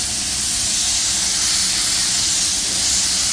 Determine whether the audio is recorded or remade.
recorded